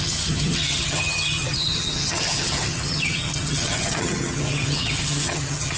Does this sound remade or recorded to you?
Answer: remade